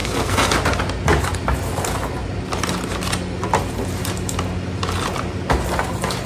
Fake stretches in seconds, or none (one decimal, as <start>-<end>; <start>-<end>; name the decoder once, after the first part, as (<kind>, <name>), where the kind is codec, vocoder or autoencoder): 0.0-0.5 (codec, SNAC)